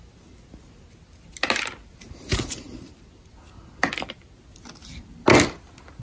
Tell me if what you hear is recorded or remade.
recorded